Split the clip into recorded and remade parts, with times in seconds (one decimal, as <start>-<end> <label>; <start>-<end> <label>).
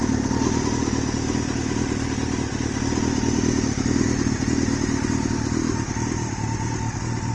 0.0-7.3 recorded